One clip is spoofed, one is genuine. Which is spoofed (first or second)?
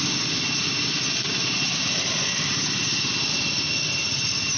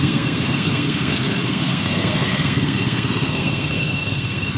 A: second